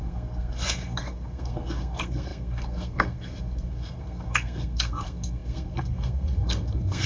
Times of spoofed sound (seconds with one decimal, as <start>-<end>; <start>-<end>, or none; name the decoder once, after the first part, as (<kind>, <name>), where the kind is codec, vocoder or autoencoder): 0.0-7.1 (codec, SNAC)